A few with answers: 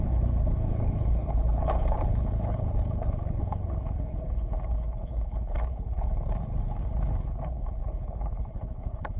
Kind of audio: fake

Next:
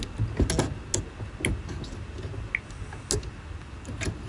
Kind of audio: real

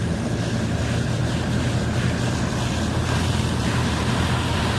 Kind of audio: real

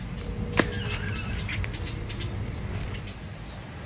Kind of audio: real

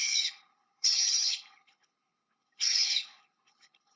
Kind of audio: fake